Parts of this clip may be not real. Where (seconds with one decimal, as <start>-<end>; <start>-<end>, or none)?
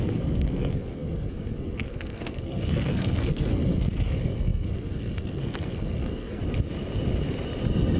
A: 0.0-6.4